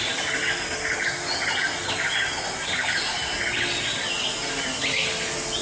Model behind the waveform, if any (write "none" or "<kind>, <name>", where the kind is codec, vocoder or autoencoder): none